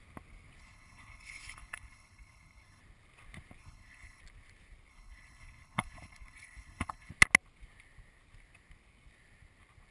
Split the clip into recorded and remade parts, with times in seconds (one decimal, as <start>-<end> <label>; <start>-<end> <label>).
0.0-0.6 recorded; 0.6-2.8 remade; 2.8-3.6 recorded; 3.6-4.2 remade; 4.2-4.9 recorded; 4.9-7.1 remade; 7.1-9.9 recorded